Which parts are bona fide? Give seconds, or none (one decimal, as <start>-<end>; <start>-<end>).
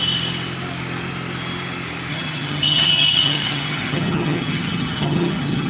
0.0-2.1